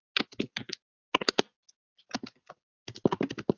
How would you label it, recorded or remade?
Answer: recorded